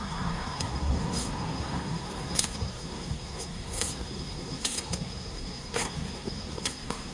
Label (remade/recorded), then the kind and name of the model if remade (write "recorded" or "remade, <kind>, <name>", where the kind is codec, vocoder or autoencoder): remade, codec, SNAC